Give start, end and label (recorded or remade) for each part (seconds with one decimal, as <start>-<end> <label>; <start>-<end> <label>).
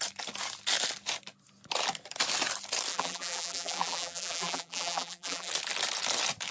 0.0-2.9 recorded; 2.9-5.5 remade; 5.5-6.5 recorded